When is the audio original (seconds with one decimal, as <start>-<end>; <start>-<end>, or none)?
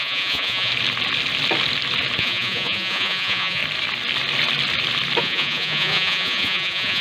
0.7-2.2; 3.6-5.2